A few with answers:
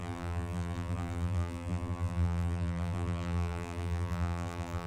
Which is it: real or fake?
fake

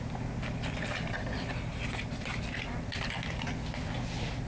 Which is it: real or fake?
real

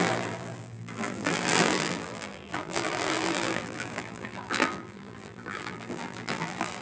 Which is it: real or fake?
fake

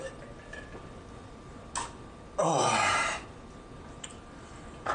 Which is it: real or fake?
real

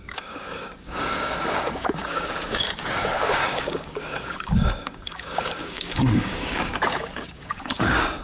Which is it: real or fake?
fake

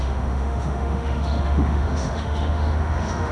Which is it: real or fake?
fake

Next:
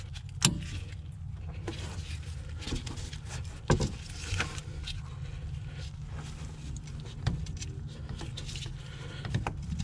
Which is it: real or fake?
real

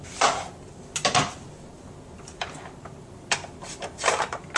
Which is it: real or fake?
real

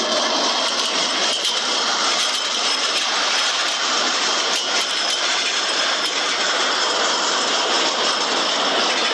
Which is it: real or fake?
fake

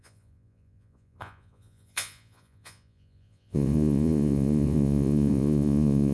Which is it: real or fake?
fake